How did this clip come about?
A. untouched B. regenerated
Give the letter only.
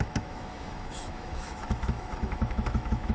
B